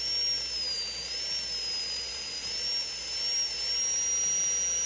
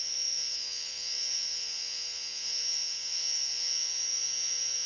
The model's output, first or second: second